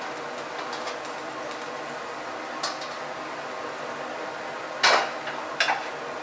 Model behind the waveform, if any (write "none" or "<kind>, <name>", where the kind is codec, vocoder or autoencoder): none